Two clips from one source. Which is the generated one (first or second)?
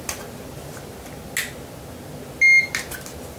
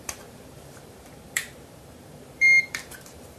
second